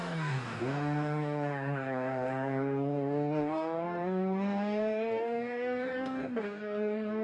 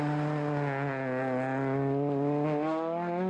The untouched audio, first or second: second